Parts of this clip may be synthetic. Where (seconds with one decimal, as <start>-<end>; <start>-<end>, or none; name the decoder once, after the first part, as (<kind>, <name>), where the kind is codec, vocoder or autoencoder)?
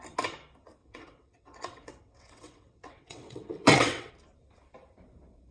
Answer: 0.8-4.1 (vocoder, WaveNeXt)